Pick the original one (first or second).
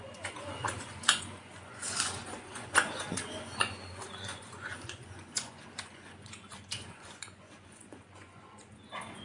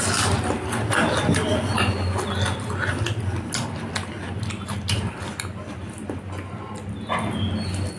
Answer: second